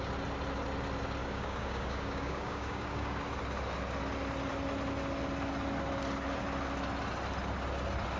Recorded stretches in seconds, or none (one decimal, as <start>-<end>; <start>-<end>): 0.0-1.2; 3.2-8.2